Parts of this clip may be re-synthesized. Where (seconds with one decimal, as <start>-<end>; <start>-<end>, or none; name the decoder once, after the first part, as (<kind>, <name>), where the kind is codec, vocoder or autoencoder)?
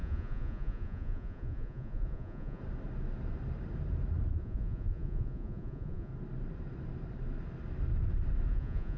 0.0-2.6 (vocoder, Vocos); 4.3-6.1; 8.5-9.0